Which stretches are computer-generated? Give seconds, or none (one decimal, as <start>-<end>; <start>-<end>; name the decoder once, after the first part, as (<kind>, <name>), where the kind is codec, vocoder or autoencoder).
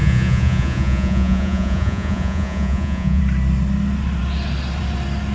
0.0-3.2 (vocoder, Vocos)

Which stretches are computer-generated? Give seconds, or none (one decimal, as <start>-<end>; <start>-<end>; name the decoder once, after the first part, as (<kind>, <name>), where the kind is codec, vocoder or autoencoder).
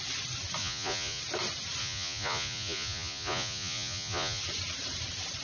0.6-1.2 (vocoder, Vocos); 1.8-4.4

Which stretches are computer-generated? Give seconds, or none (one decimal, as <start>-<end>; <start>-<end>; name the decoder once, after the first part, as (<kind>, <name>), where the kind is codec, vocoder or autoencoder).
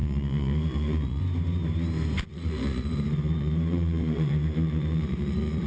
0.0-1.2 (vocoder, Vocos); 2.3-5.7